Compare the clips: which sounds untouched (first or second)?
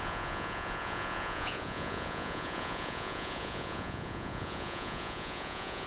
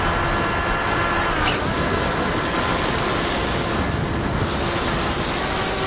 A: second